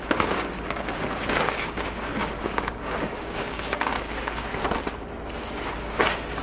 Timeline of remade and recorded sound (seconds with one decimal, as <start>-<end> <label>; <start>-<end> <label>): 0.0-4.5 remade; 4.5-5.7 recorded; 5.7-6.4 remade